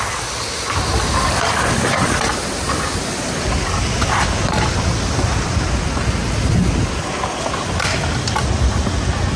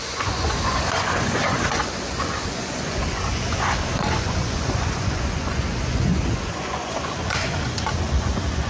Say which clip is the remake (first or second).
second